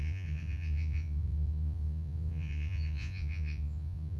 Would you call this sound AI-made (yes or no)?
yes